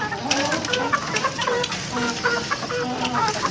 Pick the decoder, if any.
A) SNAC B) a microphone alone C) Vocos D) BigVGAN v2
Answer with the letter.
B